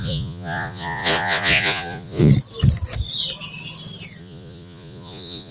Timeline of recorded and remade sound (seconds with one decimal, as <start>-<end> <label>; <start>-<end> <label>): 0.0-2.3 remade; 2.3-4.2 recorded; 4.2-5.5 remade